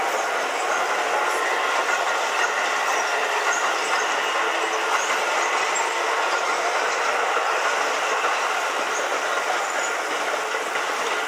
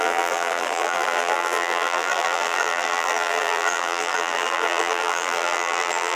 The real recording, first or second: first